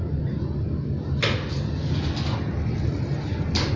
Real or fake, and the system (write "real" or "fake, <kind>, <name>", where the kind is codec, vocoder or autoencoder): real